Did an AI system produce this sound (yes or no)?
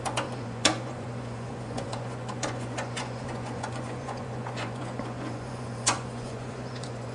yes